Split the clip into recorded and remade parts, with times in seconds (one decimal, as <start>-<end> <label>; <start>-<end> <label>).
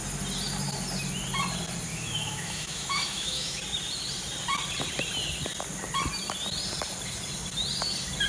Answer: 0.0-1.9 recorded; 1.9-3.6 remade; 3.6-8.3 recorded